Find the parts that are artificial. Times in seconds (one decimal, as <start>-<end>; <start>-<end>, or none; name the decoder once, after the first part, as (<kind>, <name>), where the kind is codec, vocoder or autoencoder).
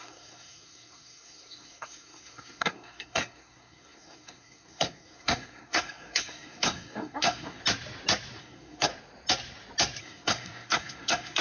0.0-7.6 (codec, SNAC); 8.4-8.9; 10.0-11.4